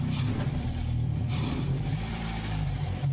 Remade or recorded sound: remade